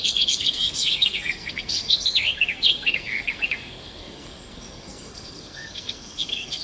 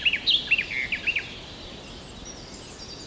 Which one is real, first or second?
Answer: second